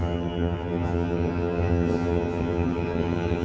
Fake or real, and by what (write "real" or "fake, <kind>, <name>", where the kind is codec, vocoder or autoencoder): fake, vocoder, HiFi-GAN